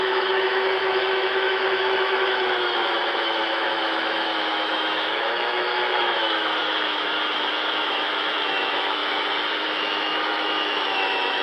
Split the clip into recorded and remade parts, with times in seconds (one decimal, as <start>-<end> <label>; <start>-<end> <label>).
0.0-9.0 remade; 9.0-9.5 recorded; 9.5-11.4 remade

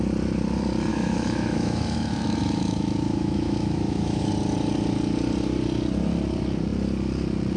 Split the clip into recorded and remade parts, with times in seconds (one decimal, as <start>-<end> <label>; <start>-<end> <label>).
0.0-0.9 recorded; 0.9-4.3 remade; 4.3-7.6 recorded

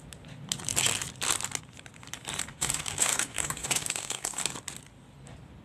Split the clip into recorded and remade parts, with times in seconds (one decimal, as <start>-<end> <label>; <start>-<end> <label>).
0.0-2.5 recorded; 2.5-4.4 remade; 4.4-5.6 recorded

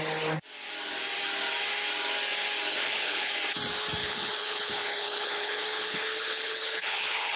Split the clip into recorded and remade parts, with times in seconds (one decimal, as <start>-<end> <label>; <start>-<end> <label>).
0.0-2.7 recorded; 2.7-3.3 remade; 3.3-4.0 recorded; 4.0-7.4 remade

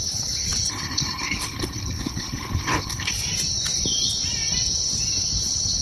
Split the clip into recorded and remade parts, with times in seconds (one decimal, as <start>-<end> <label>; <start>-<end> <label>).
0.0-0.7 recorded; 0.7-3.1 remade; 3.1-5.8 recorded

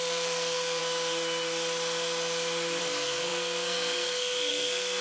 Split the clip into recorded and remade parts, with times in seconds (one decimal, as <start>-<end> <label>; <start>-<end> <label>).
0.0-0.8 remade; 0.8-2.8 recorded; 2.8-5.0 remade

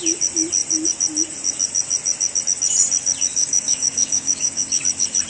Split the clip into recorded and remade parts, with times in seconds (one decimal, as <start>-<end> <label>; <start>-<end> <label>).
0.0-3.4 recorded; 3.4-4.8 remade; 4.8-5.3 recorded

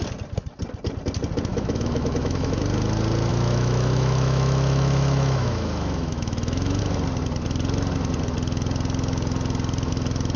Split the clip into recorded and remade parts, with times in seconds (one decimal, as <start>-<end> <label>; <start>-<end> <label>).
0.0-1.5 recorded; 1.5-2.6 remade; 2.6-3.3 recorded; 3.3-6.8 remade; 6.8-10.4 recorded